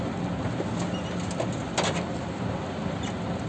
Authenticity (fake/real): real